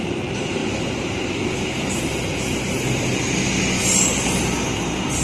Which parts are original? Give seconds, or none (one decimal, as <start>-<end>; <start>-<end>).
0.0-5.2